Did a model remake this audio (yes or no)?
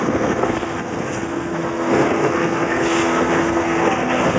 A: yes